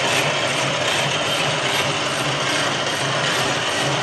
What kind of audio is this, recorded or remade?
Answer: remade